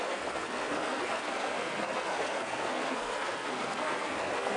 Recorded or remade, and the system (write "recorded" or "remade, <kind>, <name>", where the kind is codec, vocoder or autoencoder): remade, codec, SNAC